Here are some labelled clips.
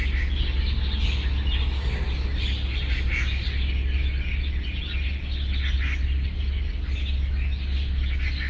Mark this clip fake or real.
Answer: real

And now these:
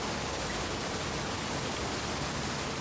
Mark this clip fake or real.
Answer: real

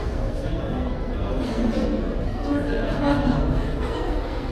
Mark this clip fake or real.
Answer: fake